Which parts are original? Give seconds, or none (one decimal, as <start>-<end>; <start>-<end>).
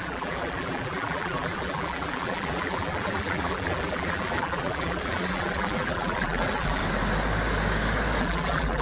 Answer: 6.8-8.2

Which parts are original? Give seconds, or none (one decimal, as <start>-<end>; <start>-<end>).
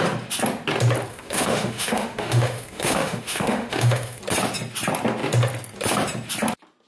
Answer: 0.0-1.1; 4.2-6.9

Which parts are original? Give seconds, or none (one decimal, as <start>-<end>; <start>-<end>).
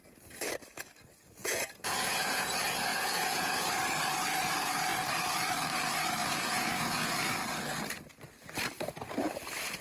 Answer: 0.0-1.4; 2.5-2.9; 3.7-6.2; 7.1-9.8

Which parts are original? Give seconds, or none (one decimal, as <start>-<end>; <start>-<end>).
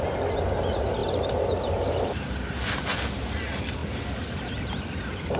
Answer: 0.0-5.4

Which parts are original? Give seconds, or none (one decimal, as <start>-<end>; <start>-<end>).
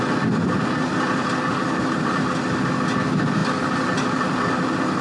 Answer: 0.0-5.0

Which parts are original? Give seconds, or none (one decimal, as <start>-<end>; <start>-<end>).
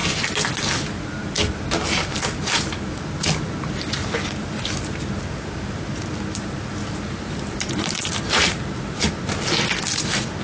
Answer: 0.0-6.8; 9.0-10.4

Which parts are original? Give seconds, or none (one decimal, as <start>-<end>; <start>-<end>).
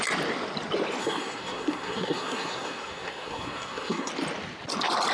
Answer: 0.0-1.0; 4.1-5.1